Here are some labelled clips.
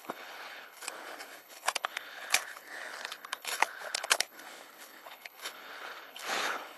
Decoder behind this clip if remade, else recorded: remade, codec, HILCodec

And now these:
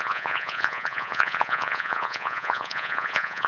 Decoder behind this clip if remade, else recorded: remade, vocoder, Vocos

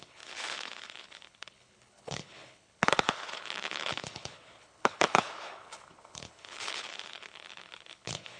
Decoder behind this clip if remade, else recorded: remade, codec, HILCodec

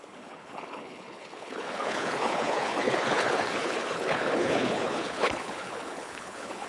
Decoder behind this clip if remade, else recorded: remade, codec, HILCodec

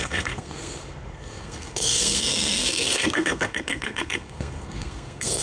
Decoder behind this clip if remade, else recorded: remade, codec, SNAC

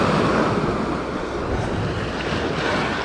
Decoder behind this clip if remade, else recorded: recorded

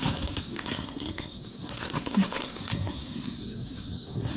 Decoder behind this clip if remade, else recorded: remade, codec, SNAC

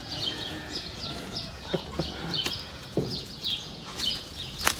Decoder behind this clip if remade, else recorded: remade, vocoder, Vocos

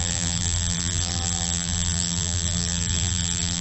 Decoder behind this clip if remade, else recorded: remade, vocoder, BigVGAN v2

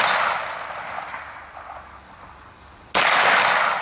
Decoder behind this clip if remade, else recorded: recorded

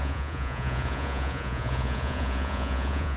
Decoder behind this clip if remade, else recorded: remade, vocoder, Vocos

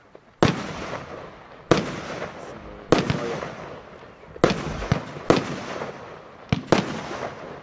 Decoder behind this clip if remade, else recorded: recorded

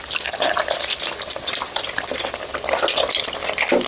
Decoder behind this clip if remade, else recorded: recorded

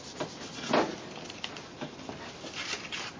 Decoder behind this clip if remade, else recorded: recorded